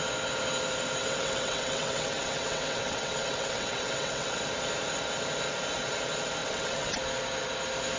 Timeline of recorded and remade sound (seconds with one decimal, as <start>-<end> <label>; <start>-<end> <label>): 0.0-1.0 recorded; 1.0-4.4 remade; 4.4-6.4 recorded; 6.4-6.9 remade; 6.9-8.0 recorded